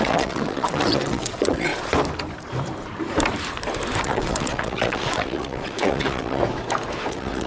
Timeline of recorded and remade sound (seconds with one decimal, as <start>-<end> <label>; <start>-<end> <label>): 0.0-1.7 remade; 1.7-4.0 recorded; 4.0-6.4 remade; 6.4-7.1 recorded; 7.1-7.5 remade